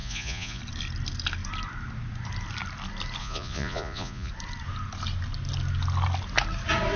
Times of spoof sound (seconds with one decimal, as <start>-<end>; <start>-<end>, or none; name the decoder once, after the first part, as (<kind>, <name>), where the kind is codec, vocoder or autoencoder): 0.0-0.6 (vocoder, Vocos); 3.2-4.3

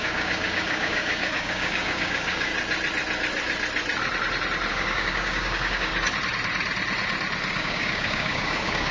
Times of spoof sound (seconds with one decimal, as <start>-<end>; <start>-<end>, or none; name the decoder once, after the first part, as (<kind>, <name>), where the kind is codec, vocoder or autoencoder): 0.0-2.5 (codec, DAC); 4.7-5.9; 7.6-8.9

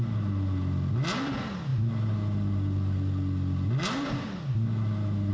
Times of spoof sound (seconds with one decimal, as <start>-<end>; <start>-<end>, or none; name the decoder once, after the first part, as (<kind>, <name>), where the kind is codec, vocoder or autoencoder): none

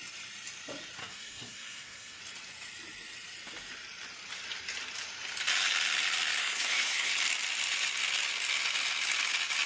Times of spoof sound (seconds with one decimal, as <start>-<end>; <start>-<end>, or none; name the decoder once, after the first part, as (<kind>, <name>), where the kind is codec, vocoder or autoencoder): 1.0-2.2 (codec, SNAC); 6.4-7.1

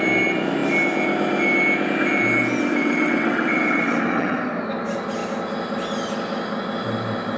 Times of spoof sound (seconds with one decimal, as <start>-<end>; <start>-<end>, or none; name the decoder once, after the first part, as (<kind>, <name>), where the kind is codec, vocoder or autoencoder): 2.8-4.4 (vocoder, WaveNeXt)

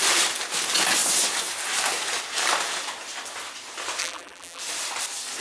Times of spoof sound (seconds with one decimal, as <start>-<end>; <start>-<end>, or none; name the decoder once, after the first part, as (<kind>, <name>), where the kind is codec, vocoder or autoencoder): 4.0-4.6 (vocoder, BigVGAN v2)

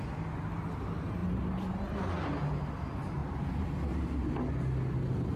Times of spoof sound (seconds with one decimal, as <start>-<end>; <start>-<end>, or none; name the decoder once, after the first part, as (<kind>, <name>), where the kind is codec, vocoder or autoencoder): none

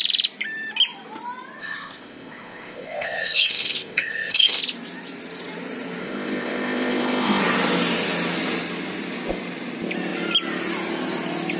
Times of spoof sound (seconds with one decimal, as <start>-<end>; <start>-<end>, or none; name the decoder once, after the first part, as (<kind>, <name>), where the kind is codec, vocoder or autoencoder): 1.6-4.6 (codec, ZipCodec); 6.0-7.4